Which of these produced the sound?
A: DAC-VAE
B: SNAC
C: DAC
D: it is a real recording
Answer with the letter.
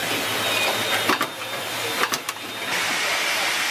D